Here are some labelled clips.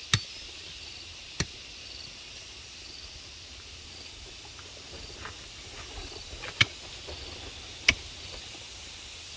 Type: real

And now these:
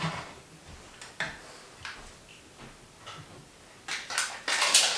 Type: real